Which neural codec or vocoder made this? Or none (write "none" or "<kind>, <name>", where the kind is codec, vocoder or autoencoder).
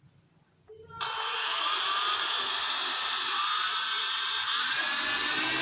none